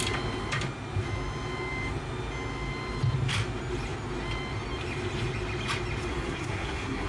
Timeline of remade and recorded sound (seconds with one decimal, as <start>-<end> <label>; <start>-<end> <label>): 0.0-6.1 recorded; 6.1-7.1 remade